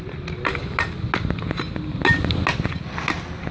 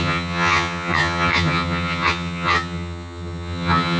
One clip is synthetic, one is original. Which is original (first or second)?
first